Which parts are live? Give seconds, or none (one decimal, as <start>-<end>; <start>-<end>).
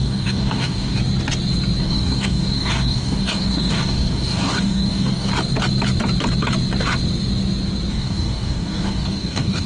1.0-1.8; 5.3-7.9